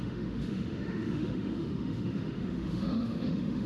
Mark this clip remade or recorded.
remade